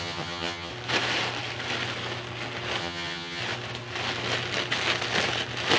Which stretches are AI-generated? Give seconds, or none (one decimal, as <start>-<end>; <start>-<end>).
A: 0.0-0.7; 2.8-3.4